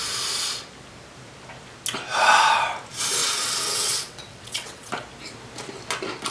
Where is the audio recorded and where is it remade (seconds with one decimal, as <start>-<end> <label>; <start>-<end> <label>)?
0.0-3.2 recorded; 3.2-4.9 remade; 4.9-6.3 recorded